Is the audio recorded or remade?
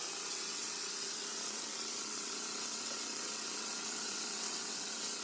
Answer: remade